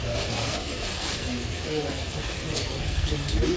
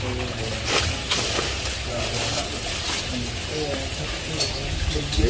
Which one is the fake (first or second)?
first